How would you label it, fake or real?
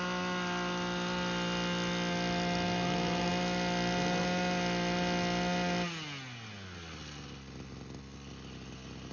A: real